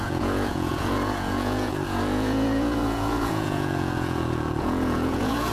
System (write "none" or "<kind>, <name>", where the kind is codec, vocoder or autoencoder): vocoder, Vocos